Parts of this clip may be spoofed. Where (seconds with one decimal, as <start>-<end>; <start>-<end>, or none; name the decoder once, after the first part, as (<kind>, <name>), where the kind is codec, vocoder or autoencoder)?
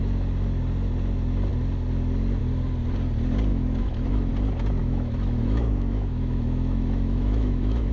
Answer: 3.5-4.3 (autoencoder, DAC-VAE); 4.8-7.9